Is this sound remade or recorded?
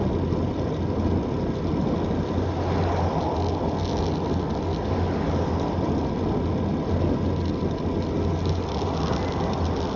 recorded